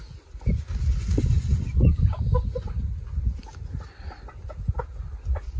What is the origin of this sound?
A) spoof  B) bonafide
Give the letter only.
B